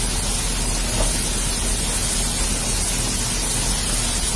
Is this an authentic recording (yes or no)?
yes